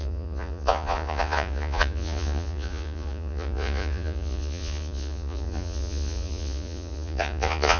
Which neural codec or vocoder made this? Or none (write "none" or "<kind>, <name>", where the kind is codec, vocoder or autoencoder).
vocoder, Vocos